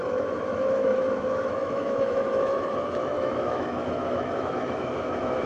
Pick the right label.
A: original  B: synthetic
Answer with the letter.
B